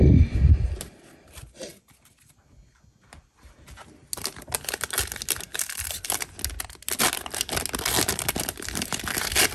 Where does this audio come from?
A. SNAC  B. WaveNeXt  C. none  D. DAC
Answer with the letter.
C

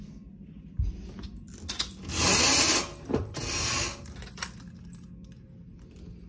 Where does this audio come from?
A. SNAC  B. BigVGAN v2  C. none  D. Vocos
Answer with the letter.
C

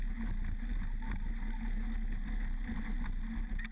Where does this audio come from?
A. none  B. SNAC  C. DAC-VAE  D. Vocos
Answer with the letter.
A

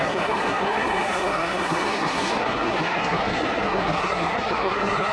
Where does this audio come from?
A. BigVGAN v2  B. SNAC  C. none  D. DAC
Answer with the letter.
B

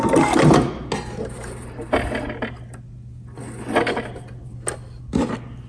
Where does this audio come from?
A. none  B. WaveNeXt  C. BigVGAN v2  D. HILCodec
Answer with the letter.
A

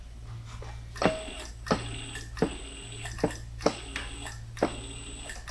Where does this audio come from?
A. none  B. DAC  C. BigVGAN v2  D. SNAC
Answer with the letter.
A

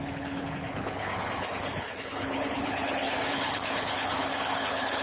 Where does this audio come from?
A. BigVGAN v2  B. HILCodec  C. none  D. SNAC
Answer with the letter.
B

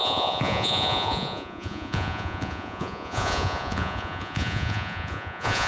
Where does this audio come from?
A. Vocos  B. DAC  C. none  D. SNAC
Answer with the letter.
A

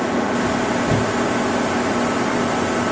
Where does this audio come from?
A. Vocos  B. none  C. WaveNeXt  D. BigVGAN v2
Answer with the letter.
B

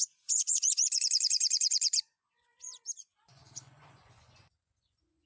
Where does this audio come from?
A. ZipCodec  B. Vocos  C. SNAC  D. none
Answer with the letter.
B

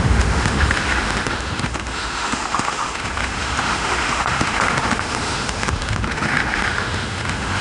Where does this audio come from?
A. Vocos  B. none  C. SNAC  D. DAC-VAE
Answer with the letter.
D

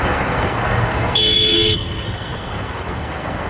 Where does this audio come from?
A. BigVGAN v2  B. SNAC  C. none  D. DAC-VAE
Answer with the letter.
B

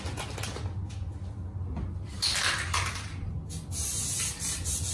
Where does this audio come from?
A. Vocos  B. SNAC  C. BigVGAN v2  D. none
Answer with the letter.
D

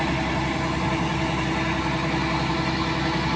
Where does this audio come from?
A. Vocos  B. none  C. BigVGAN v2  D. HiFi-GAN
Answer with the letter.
B